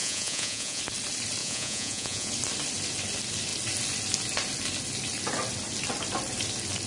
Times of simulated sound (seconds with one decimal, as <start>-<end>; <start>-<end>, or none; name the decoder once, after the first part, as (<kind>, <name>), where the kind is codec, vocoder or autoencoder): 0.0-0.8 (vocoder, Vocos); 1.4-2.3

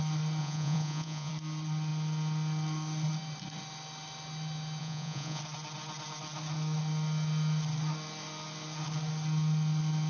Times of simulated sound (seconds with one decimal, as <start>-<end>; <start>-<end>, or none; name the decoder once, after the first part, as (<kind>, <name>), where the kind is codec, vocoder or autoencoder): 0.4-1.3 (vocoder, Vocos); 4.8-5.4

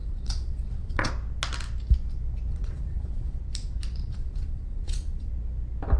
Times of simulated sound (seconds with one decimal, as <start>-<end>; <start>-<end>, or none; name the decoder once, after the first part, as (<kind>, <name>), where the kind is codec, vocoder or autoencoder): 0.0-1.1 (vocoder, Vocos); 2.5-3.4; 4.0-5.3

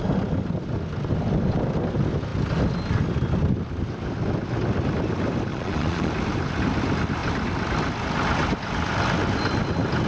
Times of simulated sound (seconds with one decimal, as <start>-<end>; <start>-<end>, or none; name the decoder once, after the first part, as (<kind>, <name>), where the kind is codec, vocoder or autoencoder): 5.5-6.1 (vocoder, Vocos)

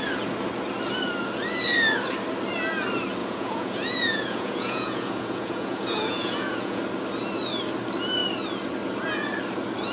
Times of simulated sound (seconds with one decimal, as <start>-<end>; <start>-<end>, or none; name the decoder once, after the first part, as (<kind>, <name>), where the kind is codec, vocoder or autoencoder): 3.2-6.8 (vocoder, Vocos)